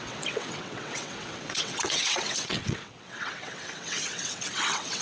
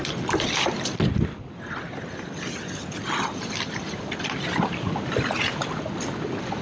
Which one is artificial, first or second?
first